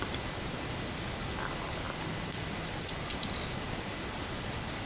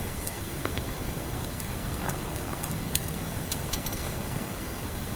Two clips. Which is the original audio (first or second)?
first